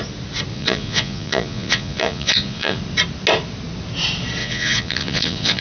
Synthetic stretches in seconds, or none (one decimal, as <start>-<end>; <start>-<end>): 0.5-2.8; 4.4-5.6